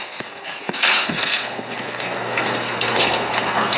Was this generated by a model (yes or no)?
yes